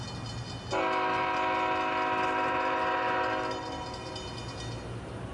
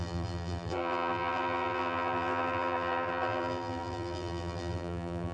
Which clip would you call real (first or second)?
first